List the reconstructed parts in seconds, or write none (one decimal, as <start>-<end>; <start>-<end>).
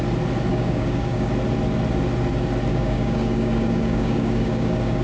0.5-1.3; 2.7-5.0